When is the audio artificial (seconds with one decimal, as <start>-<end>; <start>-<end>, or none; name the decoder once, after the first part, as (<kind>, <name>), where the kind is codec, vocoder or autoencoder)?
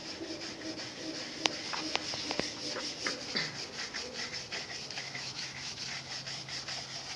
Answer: 5.0-5.8 (autoencoder, DAC-VAE)